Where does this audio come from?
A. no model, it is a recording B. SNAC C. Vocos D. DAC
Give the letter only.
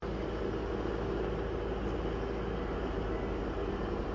A